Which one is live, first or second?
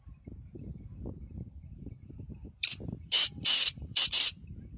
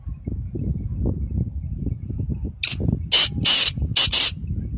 second